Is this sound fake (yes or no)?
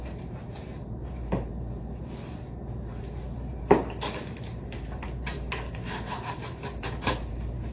yes